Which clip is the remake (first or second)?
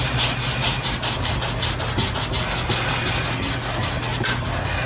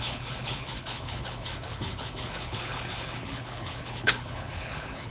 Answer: second